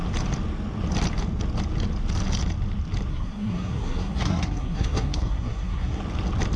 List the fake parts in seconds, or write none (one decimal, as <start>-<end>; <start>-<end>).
3.1-6.0